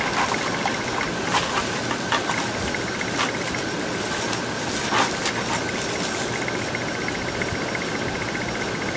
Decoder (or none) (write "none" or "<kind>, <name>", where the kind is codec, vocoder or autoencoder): none